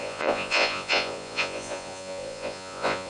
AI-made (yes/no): yes